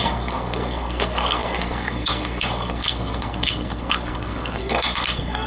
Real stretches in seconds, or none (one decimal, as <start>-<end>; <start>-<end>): none